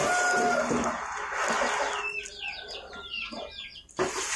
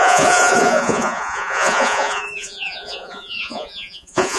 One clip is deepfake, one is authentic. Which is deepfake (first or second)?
second